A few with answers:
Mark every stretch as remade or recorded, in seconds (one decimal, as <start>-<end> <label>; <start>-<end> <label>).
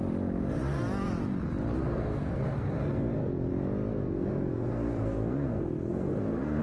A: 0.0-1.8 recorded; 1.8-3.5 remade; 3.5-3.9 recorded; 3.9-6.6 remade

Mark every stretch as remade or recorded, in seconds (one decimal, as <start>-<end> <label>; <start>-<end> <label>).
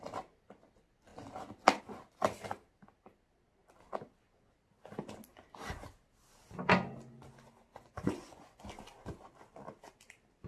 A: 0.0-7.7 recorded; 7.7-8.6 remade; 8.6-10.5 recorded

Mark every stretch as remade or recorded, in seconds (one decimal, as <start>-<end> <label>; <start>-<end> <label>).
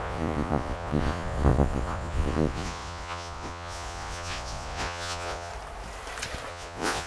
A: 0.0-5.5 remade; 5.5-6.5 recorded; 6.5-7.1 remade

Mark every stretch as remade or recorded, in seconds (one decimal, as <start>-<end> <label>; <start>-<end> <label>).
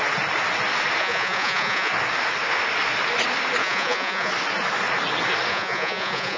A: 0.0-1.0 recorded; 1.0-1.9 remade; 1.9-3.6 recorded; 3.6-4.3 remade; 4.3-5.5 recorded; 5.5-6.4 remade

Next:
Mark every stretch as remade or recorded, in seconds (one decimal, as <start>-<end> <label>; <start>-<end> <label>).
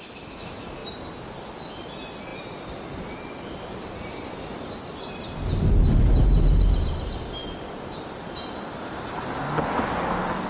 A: 0.0-10.5 recorded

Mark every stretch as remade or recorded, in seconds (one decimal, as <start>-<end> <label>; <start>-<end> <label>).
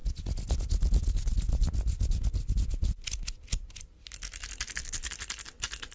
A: 0.0-5.9 recorded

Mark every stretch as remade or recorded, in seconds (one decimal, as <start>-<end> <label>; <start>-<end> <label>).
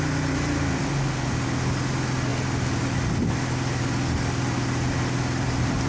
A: 0.0-5.9 recorded